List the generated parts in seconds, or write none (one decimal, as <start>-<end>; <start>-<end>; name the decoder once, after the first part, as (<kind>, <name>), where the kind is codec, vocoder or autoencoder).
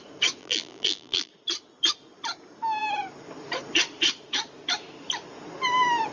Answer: 0.4-1.3 (vocoder, BigVGAN v2)